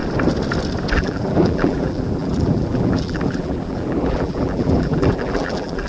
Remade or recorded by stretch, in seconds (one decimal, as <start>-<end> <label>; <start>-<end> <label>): 0.0-1.0 recorded; 1.0-5.9 remade